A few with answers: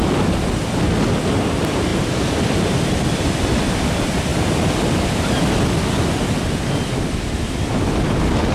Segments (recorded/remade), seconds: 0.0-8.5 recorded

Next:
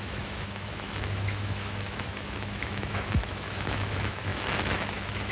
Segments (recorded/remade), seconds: 0.0-5.3 remade

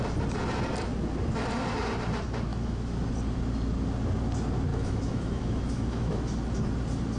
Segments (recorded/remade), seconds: 0.0-2.5 recorded; 2.5-3.0 remade; 3.0-4.7 recorded; 4.7-6.2 remade; 6.2-7.2 recorded

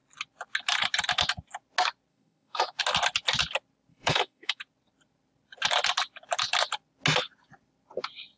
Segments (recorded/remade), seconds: 0.0-2.1 recorded; 2.1-2.8 remade; 2.8-3.9 recorded; 3.9-4.6 remade; 4.6-8.4 recorded

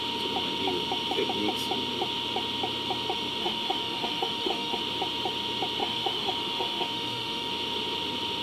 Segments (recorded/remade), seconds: 0.0-3.4 recorded; 3.4-4.8 remade; 4.8-5.8 recorded; 5.8-7.5 remade; 7.5-8.4 recorded